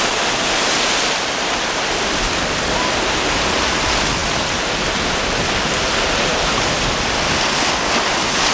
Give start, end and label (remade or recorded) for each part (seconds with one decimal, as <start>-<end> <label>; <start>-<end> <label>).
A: 0.0-8.5 recorded